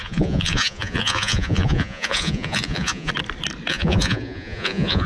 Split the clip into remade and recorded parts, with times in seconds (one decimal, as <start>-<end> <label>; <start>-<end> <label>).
0.0-3.1 remade; 3.1-3.7 recorded; 3.7-5.1 remade